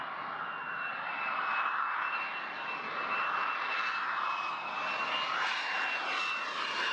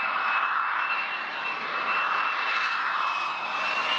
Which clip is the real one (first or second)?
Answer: first